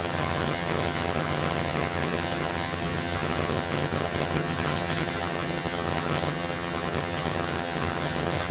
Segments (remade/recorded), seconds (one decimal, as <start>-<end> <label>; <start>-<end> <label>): 0.0-8.5 remade